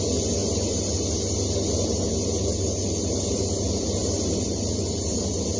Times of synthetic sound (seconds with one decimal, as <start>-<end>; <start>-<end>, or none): none